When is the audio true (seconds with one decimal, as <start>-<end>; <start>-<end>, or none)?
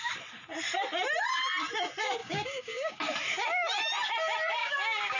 0.0-2.2; 3.0-4.6